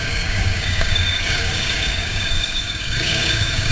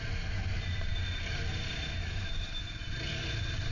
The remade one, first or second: first